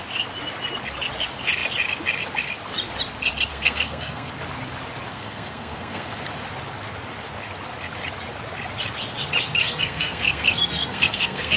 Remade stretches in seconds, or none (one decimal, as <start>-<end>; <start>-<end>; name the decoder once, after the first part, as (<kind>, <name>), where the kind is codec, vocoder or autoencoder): 3.5-4.3 (codec, SNAC); 5.1-6.2; 9.6-11.6